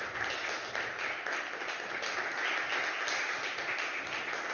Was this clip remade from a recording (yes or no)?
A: no